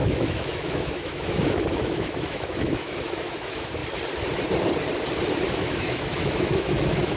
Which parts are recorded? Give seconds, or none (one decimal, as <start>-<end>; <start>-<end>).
3.8-5.5